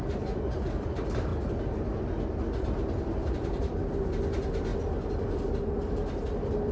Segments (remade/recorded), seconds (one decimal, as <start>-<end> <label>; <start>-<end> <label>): 0.0-6.7 recorded